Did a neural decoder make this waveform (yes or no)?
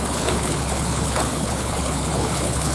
yes